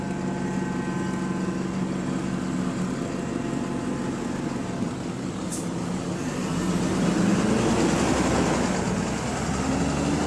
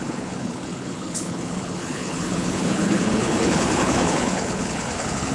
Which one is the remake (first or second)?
second